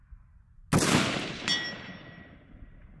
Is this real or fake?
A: real